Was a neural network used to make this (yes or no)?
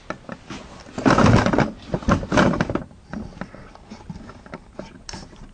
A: no